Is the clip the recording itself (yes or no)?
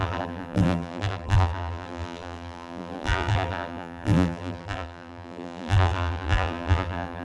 no